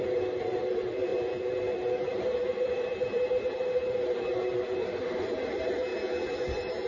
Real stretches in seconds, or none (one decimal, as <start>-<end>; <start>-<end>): 5.9-6.5